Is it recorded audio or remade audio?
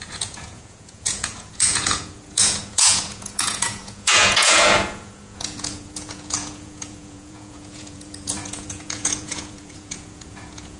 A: remade